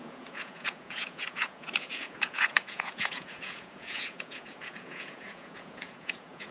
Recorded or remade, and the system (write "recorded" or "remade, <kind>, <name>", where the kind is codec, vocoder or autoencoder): remade, vocoder, Vocos